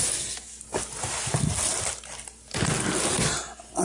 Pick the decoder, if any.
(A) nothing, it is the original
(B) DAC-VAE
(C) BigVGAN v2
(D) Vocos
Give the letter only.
A